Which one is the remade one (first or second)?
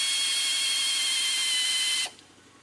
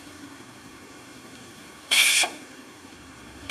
second